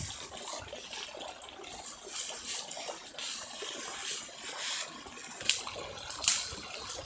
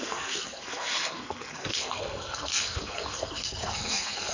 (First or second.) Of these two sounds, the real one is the first